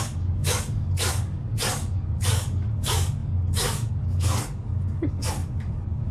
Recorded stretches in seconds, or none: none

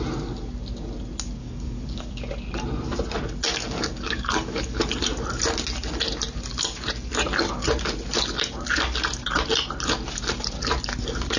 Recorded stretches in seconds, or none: 0.0-1.4; 2.1-3.5; 4.8-11.4